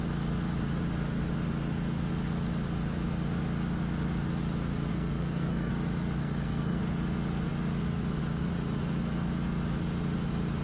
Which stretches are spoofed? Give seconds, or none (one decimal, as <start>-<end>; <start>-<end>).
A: 4.9-5.7; 6.2-6.8